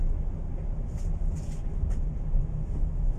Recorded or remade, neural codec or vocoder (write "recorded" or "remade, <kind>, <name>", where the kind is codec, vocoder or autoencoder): recorded